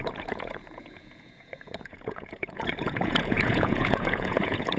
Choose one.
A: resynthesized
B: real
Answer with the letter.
A